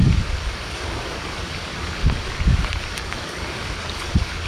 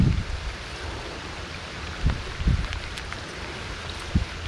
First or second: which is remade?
first